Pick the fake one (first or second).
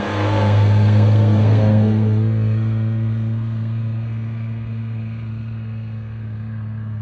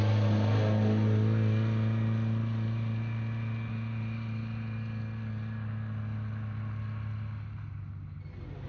first